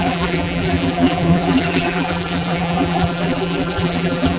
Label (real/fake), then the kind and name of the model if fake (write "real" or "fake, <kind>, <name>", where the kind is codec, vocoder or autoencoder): fake, vocoder, BigVGAN v2